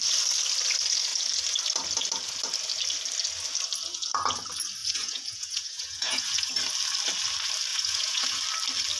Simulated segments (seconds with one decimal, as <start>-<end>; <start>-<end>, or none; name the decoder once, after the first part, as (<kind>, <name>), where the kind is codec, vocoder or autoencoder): 4.8-6.5 (vocoder, Vocos); 7.7-8.4